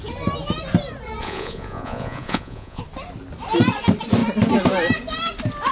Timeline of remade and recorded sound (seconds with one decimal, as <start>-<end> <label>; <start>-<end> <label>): 0.0-1.2 recorded; 1.2-2.8 remade; 2.8-5.7 recorded